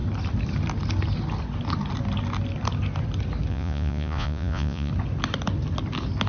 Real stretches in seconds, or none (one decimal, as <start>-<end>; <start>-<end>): 0.0-3.5; 4.9-6.3